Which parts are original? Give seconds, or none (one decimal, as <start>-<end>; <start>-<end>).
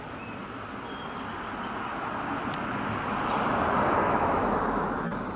0.0-4.0; 4.6-5.4